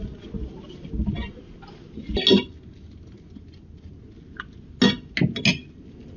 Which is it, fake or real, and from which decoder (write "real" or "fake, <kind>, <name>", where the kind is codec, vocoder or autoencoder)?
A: real